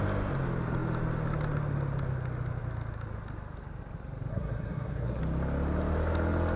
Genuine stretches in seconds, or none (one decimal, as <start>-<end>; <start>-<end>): 0.0-4.3; 5.2-6.6